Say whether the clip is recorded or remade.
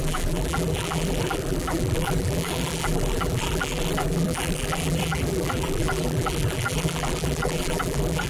remade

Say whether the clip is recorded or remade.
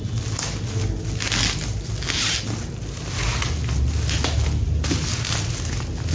recorded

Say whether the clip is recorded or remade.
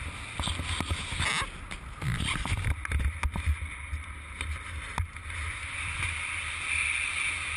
recorded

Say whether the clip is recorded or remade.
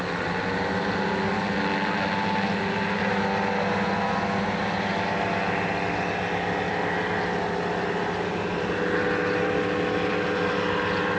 recorded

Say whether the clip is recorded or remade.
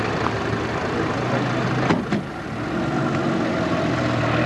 recorded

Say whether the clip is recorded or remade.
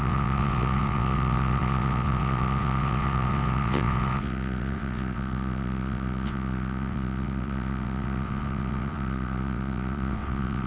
remade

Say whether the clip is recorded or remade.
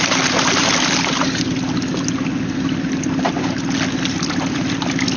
recorded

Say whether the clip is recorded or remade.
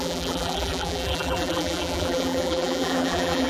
remade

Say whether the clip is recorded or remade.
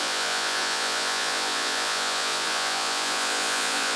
remade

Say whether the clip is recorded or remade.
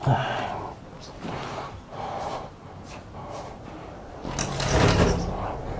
recorded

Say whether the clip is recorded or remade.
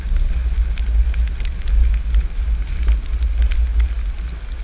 recorded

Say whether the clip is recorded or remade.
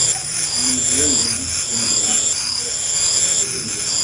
recorded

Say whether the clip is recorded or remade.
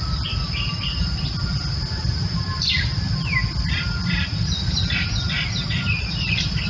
recorded